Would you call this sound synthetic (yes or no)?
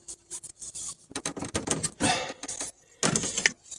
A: no